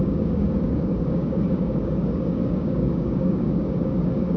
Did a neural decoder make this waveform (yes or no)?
yes